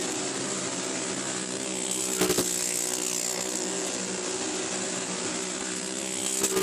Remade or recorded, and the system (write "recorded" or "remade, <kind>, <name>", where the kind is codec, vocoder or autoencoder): recorded